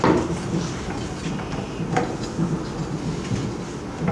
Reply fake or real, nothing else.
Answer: real